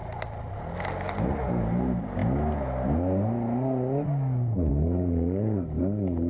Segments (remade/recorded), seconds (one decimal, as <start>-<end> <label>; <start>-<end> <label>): 0.0-1.6 recorded; 1.6-2.2 remade; 2.2-4.7 recorded; 4.7-6.3 remade